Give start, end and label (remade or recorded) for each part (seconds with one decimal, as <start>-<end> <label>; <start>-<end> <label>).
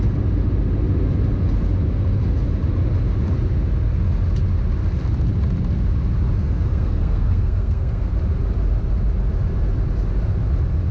0.0-6.4 recorded; 6.4-8.1 remade; 8.1-10.9 recorded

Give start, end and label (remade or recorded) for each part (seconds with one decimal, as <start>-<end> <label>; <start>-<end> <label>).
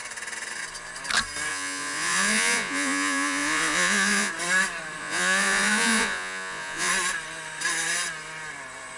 0.0-1.5 recorded; 1.5-4.3 remade; 4.3-5.0 recorded; 5.0-6.9 remade; 6.9-9.0 recorded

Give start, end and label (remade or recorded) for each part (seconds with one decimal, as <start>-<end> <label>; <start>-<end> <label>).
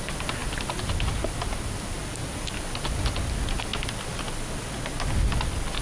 0.0-5.8 recorded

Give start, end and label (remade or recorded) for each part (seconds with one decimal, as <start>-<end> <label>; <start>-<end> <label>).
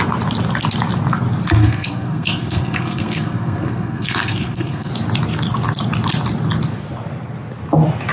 0.0-1.6 recorded; 1.6-4.9 remade; 4.9-8.1 recorded